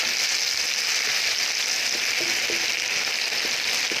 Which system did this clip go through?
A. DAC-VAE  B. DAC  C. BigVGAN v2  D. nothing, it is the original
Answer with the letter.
D